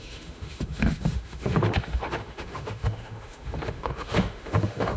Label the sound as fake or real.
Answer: fake